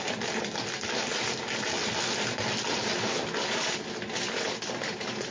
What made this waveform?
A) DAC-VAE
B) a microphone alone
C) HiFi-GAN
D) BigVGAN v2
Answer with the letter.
B